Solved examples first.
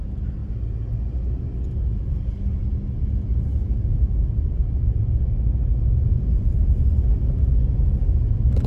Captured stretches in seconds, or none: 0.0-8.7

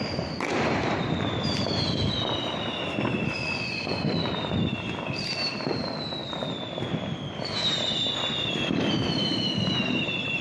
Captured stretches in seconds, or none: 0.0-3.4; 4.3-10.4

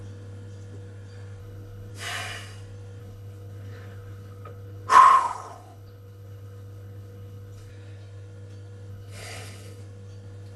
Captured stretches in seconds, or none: 0.0-1.4; 1.9-3.0; 7.7-8.9; 9.8-10.6